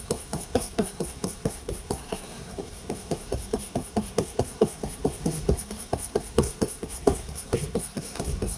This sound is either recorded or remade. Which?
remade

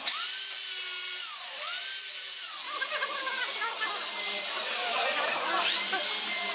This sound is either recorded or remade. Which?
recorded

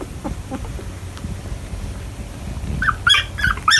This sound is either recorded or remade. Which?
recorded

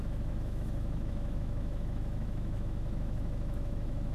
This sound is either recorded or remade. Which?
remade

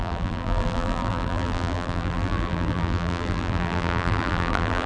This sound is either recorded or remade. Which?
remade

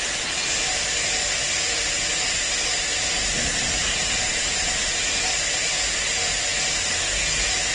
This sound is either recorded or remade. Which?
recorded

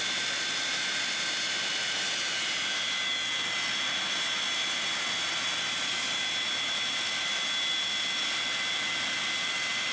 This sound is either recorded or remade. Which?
recorded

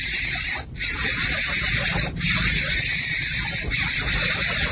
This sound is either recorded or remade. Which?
recorded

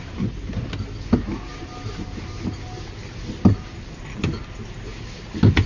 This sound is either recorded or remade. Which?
recorded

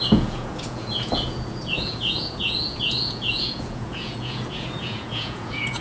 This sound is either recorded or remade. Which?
remade